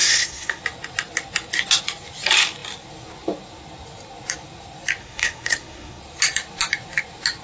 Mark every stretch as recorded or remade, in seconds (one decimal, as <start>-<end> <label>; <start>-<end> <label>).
0.0-0.6 remade; 0.6-5.0 recorded; 5.0-6.0 remade; 6.0-7.4 recorded

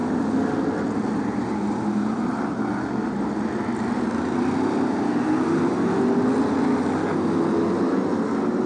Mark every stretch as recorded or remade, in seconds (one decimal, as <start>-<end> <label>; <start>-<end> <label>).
0.0-8.7 recorded

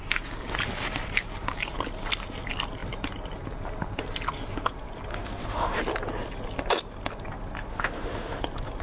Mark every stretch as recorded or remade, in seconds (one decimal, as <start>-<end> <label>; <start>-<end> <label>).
0.0-5.1 recorded; 5.1-5.8 remade; 5.8-7.7 recorded; 7.7-8.4 remade; 8.4-8.8 recorded

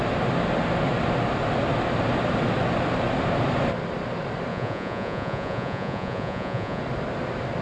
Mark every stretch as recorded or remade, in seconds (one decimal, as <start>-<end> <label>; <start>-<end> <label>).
0.0-4.5 recorded; 4.5-6.8 remade; 6.8-7.6 recorded

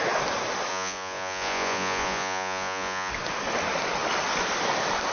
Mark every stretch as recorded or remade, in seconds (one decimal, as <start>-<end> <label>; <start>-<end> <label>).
0.0-0.7 recorded; 0.7-3.1 remade; 3.1-5.1 recorded

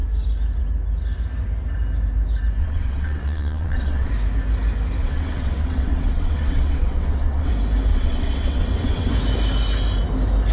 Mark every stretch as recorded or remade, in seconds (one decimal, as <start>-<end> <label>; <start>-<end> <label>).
0.0-2.6 recorded; 2.6-4.1 remade; 4.1-5.0 recorded; 5.0-7.5 remade; 7.5-7.9 recorded; 7.9-9.1 remade; 9.1-10.5 recorded

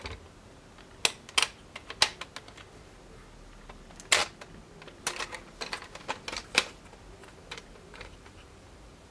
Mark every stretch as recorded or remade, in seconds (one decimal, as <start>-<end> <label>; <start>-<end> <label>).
0.0-7.2 recorded; 7.2-9.1 remade

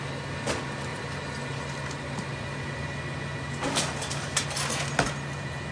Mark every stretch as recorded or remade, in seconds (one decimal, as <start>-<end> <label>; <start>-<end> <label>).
0.0-5.7 recorded